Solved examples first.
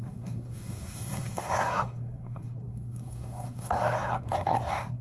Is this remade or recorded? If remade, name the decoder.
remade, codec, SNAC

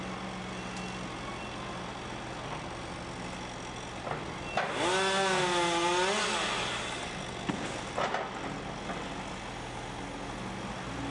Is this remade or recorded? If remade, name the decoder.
recorded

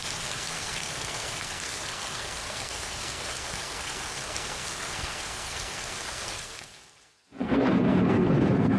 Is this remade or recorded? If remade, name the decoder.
remade, codec, SNAC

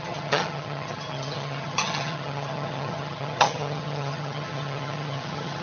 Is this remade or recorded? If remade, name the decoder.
remade, vocoder, HiFi-GAN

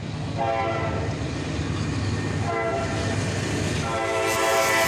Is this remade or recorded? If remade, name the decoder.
recorded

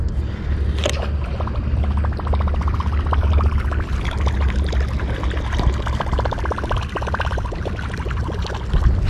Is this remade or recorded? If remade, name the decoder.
recorded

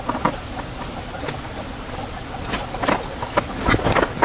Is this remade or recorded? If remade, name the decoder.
recorded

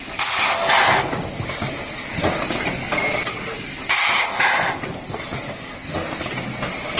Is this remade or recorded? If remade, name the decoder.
recorded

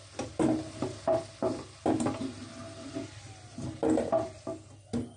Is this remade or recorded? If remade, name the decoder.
recorded